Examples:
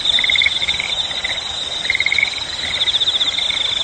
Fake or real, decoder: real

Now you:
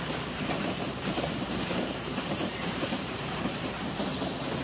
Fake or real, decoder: fake, vocoder, BigVGAN v2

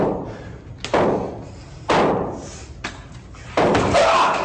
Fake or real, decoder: real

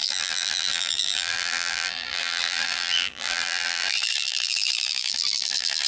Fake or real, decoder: fake, vocoder, BigVGAN v2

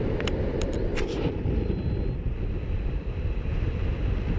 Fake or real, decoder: fake, vocoder, BigVGAN v2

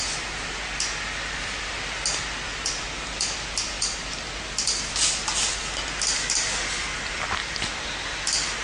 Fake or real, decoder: real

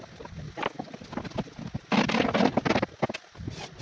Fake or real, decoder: real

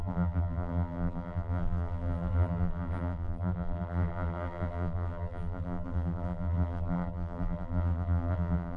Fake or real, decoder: fake, vocoder, BigVGAN v2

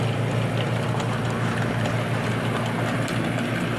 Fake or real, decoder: real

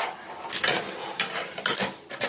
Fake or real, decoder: real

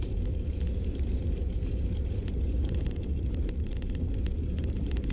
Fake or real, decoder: fake, vocoder, BigVGAN v2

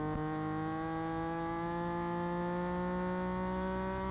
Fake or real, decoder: real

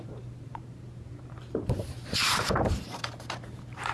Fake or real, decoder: fake, vocoder, BigVGAN v2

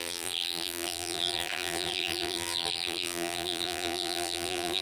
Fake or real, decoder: fake, vocoder, BigVGAN v2